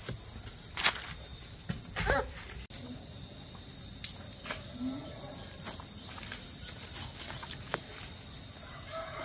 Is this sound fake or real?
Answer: real